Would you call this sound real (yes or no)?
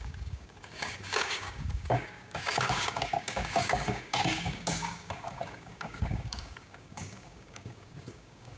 no